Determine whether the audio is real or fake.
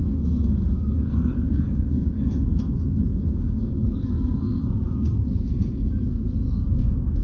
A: fake